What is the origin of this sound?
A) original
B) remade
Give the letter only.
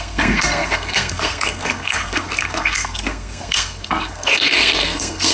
B